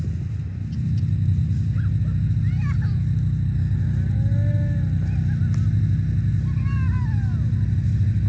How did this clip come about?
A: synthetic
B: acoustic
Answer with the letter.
B